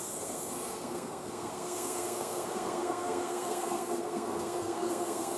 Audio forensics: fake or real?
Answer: fake